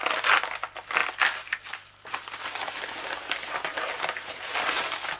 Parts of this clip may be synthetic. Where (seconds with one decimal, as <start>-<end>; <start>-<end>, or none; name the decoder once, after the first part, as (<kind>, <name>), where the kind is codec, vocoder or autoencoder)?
none